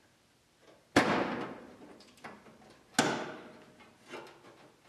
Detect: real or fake real